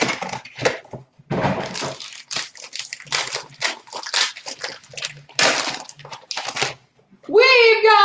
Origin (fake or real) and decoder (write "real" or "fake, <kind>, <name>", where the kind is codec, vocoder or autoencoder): real